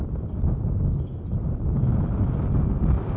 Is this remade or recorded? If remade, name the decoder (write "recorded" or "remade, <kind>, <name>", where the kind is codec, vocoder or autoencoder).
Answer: recorded